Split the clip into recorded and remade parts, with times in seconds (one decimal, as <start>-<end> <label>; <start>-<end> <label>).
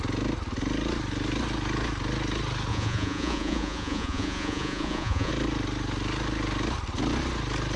0.0-2.7 recorded; 2.7-5.3 remade; 5.3-7.8 recorded